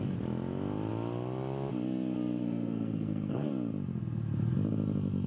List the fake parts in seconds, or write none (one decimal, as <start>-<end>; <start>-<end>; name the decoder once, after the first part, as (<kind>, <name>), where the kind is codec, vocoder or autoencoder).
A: 2.4-3.5 (codec, SNAC)